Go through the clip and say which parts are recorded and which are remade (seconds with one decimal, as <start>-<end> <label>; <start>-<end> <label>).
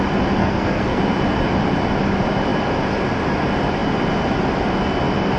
0.0-0.4 recorded; 0.4-1.0 remade; 1.0-5.4 recorded